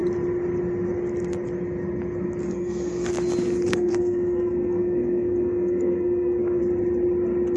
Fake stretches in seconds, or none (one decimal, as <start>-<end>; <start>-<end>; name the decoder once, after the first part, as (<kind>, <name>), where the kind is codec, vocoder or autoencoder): 2.4-3.1 (codec, SNAC); 3.7-6.6